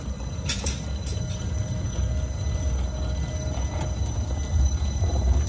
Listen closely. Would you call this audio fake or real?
real